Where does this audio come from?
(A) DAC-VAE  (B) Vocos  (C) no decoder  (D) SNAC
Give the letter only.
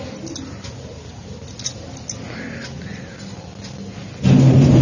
C